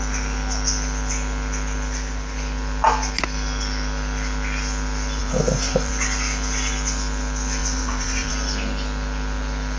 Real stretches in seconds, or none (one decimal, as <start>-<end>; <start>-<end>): 0.0-5.2; 5.9-7.6; 8.3-9.8